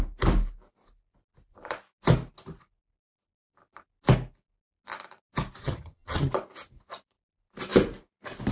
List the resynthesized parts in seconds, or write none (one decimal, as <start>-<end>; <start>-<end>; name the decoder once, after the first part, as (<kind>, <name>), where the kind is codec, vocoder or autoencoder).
5.6-6.3 (vocoder, HiFi-GAN)